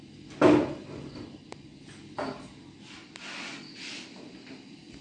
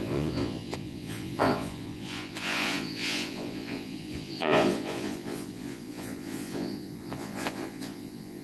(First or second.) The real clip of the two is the first